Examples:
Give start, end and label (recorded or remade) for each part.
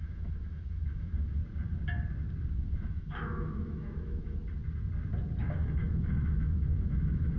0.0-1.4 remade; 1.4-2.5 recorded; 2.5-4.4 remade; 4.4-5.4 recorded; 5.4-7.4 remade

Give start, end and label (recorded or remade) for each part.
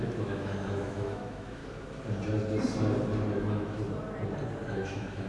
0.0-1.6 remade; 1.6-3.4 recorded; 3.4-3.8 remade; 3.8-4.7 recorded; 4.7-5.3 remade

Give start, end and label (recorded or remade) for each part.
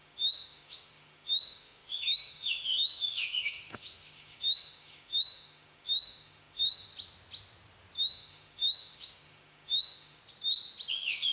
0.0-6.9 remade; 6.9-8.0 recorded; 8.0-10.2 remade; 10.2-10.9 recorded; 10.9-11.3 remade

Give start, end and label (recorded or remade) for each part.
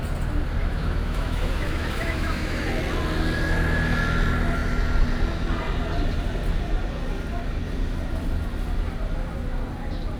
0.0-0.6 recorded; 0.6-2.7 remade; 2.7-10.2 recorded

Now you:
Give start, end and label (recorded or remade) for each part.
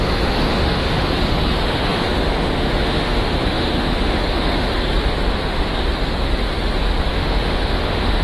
0.0-4.7 remade; 4.7-7.1 recorded; 7.1-8.2 remade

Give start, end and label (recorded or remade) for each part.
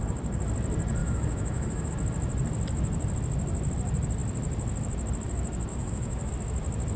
0.0-1.0 recorded; 1.0-1.9 remade; 1.9-5.7 recorded; 5.7-6.3 remade; 6.3-7.0 recorded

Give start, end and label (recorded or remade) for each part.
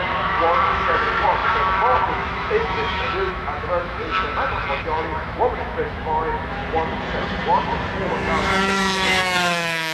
0.0-6.6 remade; 6.6-8.1 recorded; 8.1-9.9 remade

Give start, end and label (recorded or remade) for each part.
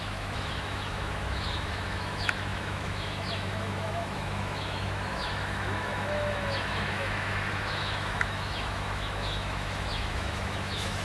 0.0-11.0 remade